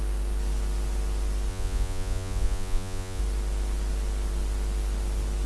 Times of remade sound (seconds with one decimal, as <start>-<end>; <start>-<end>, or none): 1.5-3.2